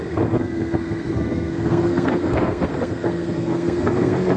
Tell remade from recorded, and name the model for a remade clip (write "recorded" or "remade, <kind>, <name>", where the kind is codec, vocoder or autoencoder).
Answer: remade, codec, SNAC